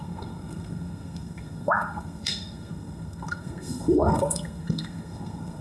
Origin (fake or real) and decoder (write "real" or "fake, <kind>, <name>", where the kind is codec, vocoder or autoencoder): fake, codec, SNAC